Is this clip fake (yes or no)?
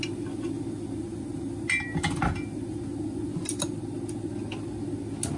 no